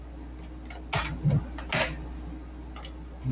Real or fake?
real